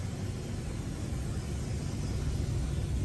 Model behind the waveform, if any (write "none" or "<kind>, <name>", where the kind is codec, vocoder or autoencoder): none